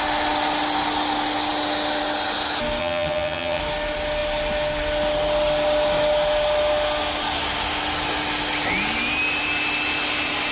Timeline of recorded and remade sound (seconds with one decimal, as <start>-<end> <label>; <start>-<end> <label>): 0.0-2.8 recorded; 2.8-3.6 remade; 3.6-10.5 recorded

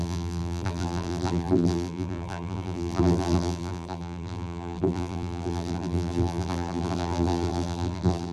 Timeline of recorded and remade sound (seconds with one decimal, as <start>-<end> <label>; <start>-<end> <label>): 0.0-8.3 remade

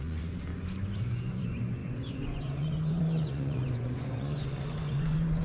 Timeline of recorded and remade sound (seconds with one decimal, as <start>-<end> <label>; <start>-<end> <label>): 0.0-0.5 remade; 0.5-1.0 recorded; 1.0-5.4 remade